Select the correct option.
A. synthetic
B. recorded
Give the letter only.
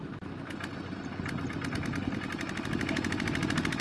B